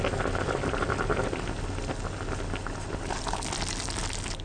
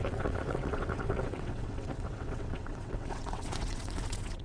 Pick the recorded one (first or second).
first